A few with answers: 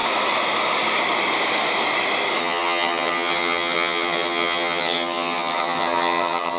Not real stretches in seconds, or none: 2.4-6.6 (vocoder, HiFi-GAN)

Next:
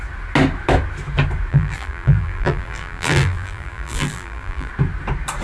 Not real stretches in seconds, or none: 1.5-4.7 (vocoder, BigVGAN v2)

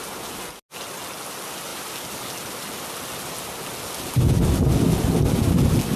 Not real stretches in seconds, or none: none

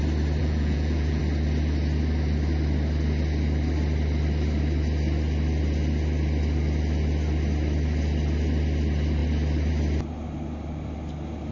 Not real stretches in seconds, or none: 0.4-1.2 (vocoder, Vocos)